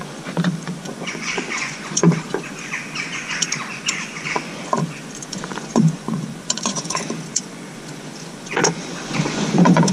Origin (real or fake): fake